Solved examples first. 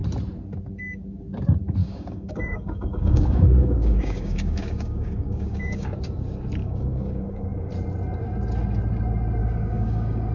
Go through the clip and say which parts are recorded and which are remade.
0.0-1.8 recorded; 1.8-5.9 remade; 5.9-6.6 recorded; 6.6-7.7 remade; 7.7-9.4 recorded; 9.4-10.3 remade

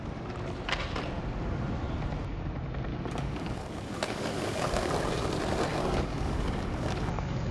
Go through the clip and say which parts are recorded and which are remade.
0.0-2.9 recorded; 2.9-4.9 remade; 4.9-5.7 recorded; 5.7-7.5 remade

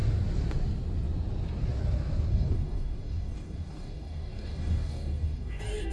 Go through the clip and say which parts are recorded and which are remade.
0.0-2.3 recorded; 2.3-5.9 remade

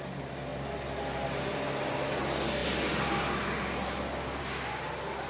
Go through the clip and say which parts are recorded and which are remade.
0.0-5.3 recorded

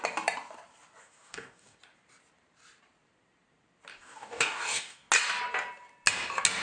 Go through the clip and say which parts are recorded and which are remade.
0.0-1.0 recorded; 1.0-1.8 remade; 1.8-3.9 recorded; 3.9-5.1 remade; 5.1-6.6 recorded

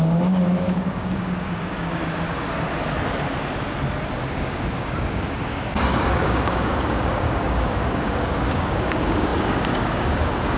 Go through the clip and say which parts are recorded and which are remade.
0.0-2.0 remade; 2.0-4.1 recorded; 4.1-10.6 remade

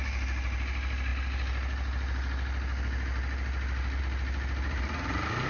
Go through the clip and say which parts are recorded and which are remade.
0.0-5.5 recorded